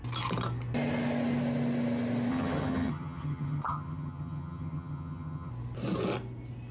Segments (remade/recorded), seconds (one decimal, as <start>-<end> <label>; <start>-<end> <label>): 0.0-2.3 recorded; 2.3-5.5 remade; 5.5-6.7 recorded